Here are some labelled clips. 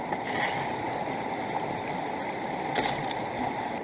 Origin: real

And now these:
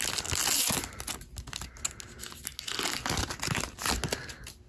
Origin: real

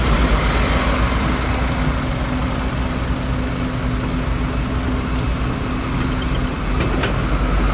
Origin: real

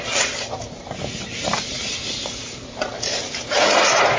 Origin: fake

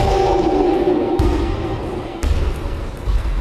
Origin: fake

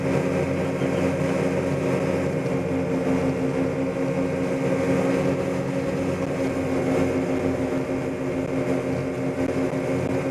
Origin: real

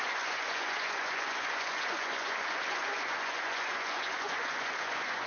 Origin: fake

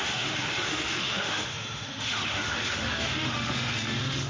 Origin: fake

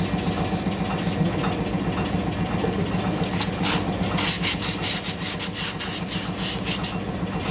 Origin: real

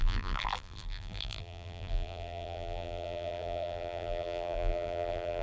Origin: fake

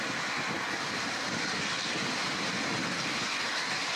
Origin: real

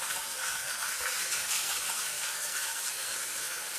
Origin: fake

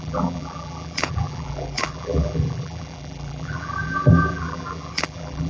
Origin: fake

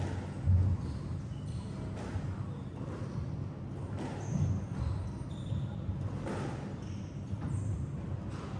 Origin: real